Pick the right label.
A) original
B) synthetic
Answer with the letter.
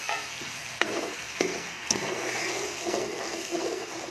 B